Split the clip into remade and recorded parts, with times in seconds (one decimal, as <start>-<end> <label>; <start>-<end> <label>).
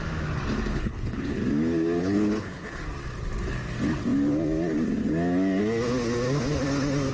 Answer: 0.0-0.7 recorded; 0.7-1.4 remade; 1.4-2.0 recorded; 2.0-2.8 remade; 2.8-7.1 recorded